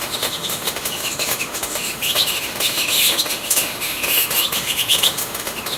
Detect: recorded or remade remade